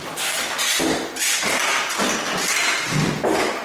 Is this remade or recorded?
recorded